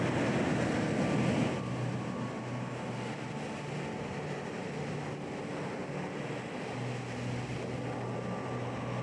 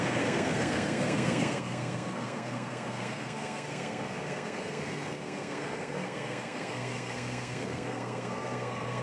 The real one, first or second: first